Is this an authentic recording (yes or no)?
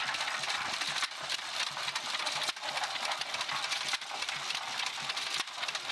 yes